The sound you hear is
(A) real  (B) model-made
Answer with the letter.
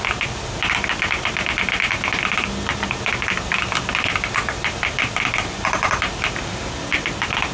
A